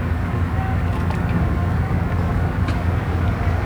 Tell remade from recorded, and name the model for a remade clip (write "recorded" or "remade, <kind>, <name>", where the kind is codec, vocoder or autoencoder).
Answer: remade, codec, DAC